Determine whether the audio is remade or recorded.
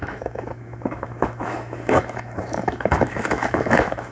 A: remade